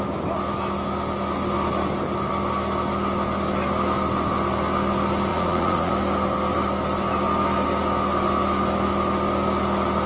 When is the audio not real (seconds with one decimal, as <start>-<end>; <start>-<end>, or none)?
5.3-5.9